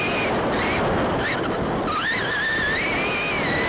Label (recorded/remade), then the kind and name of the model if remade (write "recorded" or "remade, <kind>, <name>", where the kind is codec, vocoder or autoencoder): recorded